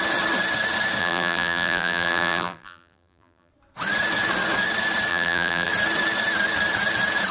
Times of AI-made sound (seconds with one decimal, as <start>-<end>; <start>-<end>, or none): 1.0-3.5; 5.1-5.7